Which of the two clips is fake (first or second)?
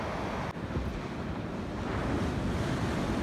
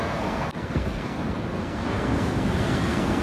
second